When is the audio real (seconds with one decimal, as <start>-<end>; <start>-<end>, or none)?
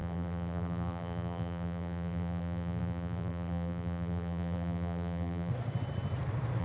5.5-6.6